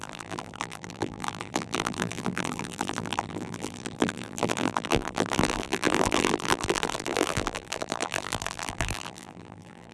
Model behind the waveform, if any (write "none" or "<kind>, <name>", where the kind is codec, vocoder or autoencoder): vocoder, BigVGAN v2